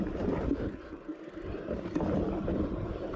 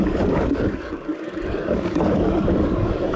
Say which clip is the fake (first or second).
second